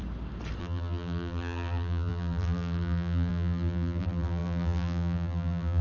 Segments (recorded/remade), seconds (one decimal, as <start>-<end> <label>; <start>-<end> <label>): 0.0-0.6 recorded; 0.6-5.8 remade